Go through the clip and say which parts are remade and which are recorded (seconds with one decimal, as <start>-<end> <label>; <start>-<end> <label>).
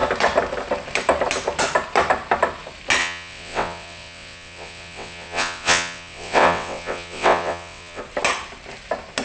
0.0-3.0 recorded; 3.0-8.0 remade; 8.0-9.2 recorded